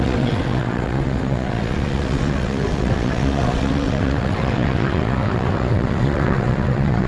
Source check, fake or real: fake